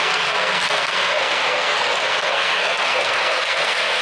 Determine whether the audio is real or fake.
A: fake